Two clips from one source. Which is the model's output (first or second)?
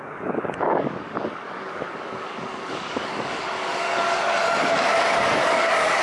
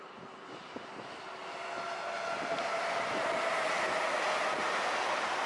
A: first